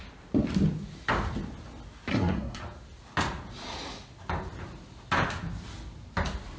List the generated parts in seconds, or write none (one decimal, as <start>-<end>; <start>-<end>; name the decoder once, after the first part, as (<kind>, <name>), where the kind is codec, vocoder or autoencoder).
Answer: 2.1-2.6 (codec, SNAC)